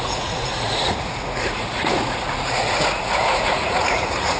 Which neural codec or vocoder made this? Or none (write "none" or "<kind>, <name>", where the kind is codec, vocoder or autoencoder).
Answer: vocoder, Vocos